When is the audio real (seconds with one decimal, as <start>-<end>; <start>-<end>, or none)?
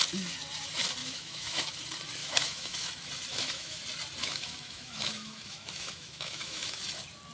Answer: 0.0-1.0; 1.8-2.2; 2.9-3.3; 3.8-4.2; 6.8-7.3